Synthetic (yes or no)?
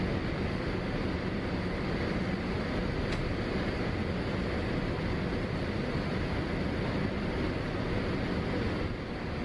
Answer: no